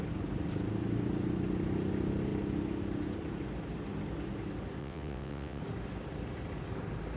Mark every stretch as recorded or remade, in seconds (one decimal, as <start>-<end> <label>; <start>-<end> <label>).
0.0-4.8 recorded; 4.8-5.6 remade; 5.6-7.2 recorded